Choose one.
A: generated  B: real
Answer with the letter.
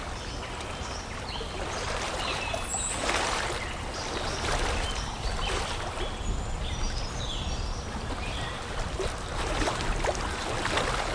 B